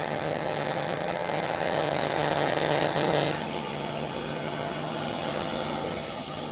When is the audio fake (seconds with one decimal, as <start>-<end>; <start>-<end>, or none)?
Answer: 0.0-6.5